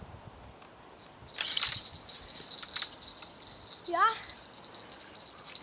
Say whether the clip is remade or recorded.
recorded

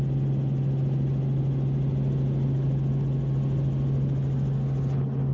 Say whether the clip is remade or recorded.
recorded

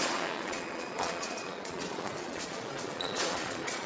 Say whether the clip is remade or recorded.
remade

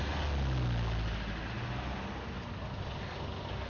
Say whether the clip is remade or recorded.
recorded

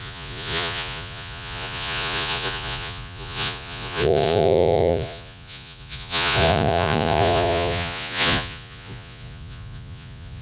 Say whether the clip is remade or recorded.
remade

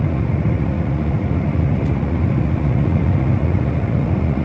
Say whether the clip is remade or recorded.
remade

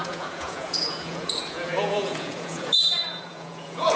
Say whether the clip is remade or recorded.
remade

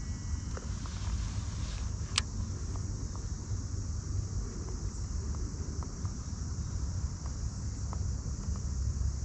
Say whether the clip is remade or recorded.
recorded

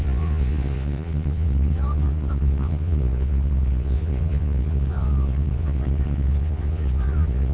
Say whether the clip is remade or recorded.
remade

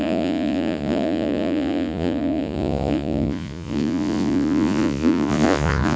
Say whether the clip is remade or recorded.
remade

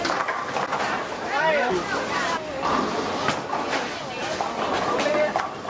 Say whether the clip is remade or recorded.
recorded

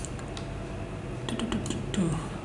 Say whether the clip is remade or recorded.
recorded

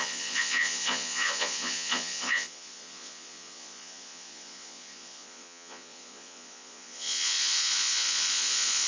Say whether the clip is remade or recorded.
remade